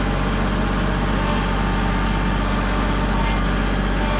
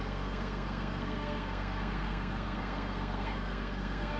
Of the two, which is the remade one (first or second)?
second